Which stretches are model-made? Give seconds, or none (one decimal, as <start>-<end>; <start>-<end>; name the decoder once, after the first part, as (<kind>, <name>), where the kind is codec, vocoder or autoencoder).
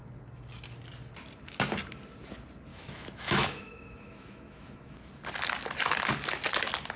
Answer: 2.7-5.1 (autoencoder, DAC-VAE)